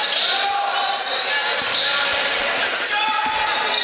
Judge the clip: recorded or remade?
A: recorded